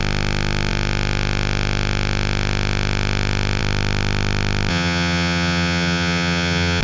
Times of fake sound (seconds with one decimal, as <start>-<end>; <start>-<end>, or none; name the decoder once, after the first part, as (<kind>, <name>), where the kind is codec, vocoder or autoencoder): 4.7-6.8 (vocoder, HiFi-GAN)